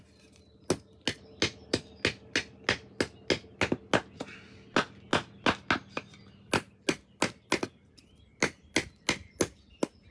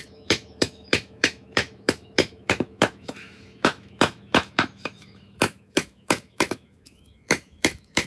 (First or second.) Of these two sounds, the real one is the first